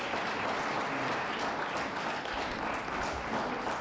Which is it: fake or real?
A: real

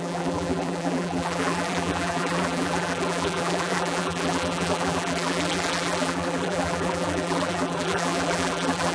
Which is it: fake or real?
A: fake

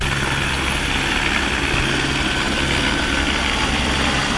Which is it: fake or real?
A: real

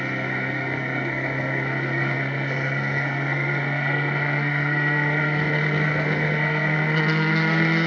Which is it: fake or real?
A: fake